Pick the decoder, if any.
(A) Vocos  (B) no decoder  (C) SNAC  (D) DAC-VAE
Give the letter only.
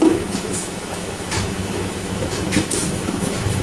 D